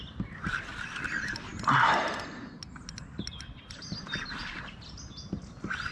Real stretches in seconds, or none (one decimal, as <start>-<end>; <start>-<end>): 0.0-5.9